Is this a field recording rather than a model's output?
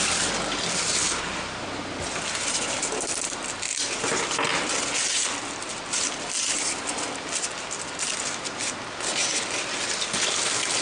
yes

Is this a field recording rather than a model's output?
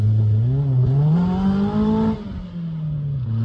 yes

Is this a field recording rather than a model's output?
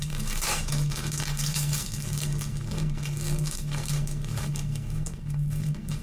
no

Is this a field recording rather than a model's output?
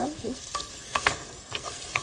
no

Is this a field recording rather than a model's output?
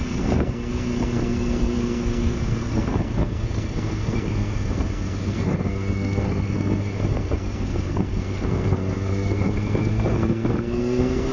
no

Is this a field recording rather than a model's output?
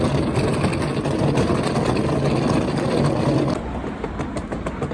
yes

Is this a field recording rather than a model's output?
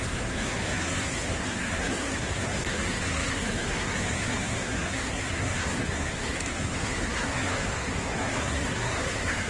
no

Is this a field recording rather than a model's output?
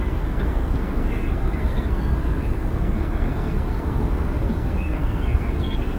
no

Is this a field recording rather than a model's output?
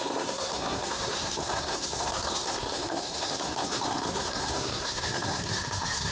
no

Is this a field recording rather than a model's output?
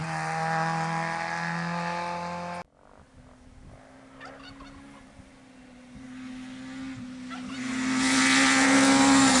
yes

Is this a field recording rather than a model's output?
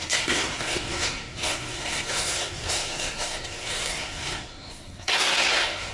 no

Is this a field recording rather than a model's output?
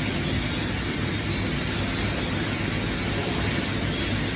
yes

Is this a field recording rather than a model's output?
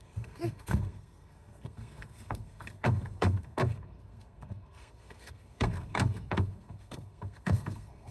no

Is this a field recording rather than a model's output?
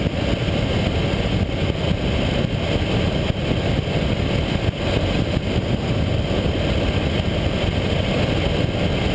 yes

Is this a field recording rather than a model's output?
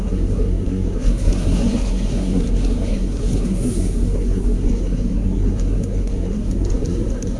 no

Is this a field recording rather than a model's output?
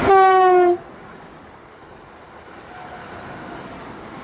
yes